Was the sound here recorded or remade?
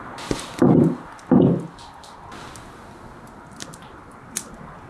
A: recorded